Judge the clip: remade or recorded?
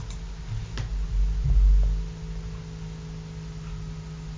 recorded